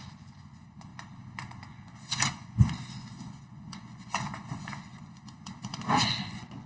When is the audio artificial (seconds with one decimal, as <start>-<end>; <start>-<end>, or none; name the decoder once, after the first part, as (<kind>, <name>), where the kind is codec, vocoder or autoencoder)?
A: 0.0-0.9 (vocoder, Vocos); 1.5-6.7